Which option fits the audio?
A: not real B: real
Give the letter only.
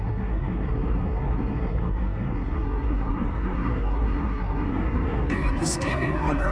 A